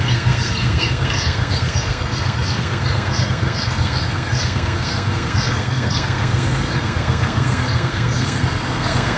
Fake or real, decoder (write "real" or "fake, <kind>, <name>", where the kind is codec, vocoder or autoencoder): fake, codec, SNAC